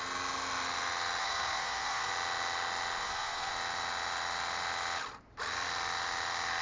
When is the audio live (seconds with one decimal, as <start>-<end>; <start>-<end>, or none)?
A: 0.0-1.2; 2.1-3.0; 3.5-6.6